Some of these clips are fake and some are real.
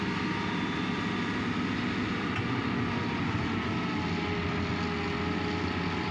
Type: real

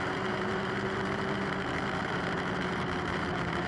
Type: fake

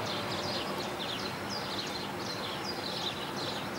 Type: real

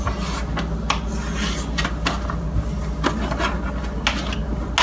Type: real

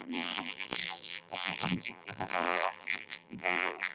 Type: fake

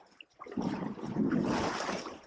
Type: real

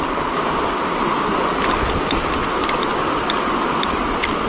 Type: real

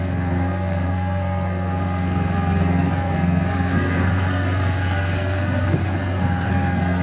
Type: fake